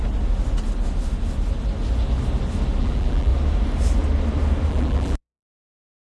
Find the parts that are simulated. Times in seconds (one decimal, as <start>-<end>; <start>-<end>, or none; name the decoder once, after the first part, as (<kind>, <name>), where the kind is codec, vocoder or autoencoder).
2.8-3.3 (vocoder, BigVGAN v2); 4.7-6.1